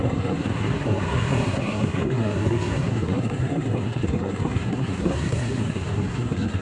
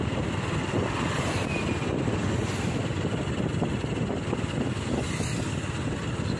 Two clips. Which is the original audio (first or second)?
second